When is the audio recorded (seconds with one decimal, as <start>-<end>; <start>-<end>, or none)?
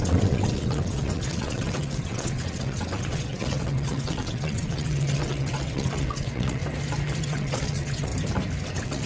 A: 6.6-7.2; 8.1-8.7